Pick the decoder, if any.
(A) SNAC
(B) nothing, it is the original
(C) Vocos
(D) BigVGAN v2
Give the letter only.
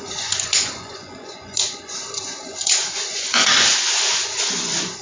C